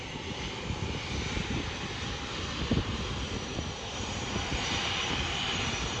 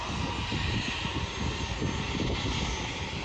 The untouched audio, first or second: second